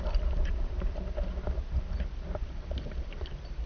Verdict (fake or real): real